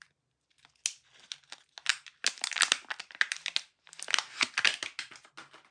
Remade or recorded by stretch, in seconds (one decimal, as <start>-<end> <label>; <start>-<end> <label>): 0.0-5.7 recorded